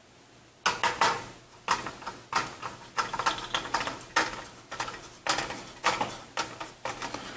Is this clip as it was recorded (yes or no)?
yes